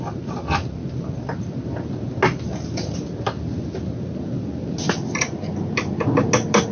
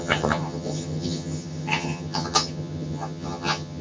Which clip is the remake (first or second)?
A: second